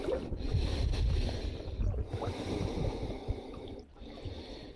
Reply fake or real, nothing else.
real